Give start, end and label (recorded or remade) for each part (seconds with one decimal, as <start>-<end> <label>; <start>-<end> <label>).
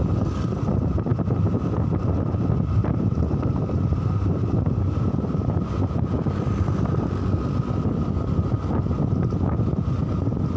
0.0-2.8 recorded; 2.8-5.7 remade; 5.7-10.6 recorded